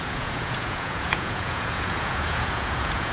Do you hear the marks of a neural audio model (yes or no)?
yes